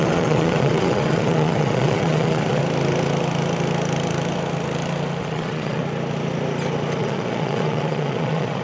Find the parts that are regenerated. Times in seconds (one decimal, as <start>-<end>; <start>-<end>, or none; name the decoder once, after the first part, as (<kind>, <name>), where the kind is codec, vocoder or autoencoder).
0.0-2.6 (vocoder, Vocos); 5.2-5.8; 7.0-8.6